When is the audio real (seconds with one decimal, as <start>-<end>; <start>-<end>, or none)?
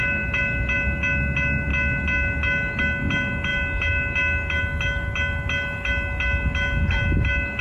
0.0-7.6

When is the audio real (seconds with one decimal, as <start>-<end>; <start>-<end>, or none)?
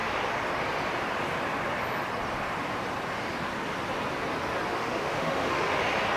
0.0-4.7; 5.8-6.2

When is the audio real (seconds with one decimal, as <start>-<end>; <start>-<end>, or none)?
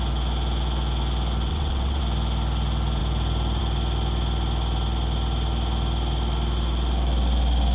0.0-1.5; 2.0-7.7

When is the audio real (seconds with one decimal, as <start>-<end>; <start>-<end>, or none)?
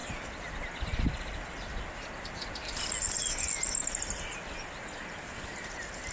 0.0-6.1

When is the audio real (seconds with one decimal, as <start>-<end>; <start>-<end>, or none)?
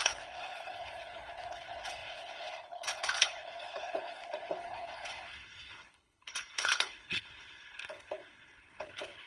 none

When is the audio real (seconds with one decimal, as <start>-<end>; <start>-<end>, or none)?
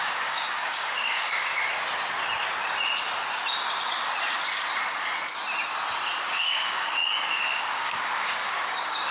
1.5-6.3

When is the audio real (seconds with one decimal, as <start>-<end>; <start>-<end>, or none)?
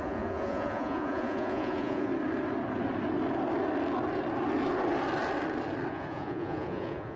2.1-5.9